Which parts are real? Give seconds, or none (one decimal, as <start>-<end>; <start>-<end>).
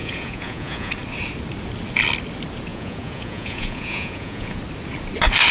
0.9-2.7; 4.6-5.5